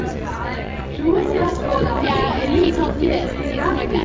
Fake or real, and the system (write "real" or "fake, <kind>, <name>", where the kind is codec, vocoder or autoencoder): fake, vocoder, Vocos